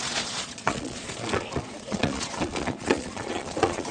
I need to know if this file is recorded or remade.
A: remade